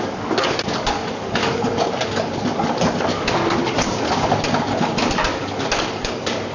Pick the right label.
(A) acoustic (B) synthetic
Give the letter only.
B